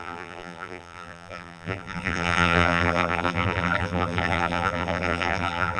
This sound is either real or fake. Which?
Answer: fake